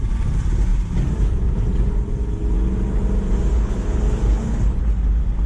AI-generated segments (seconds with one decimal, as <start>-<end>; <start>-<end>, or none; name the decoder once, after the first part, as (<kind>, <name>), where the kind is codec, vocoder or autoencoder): 3.5-4.8 (codec, HILCodec)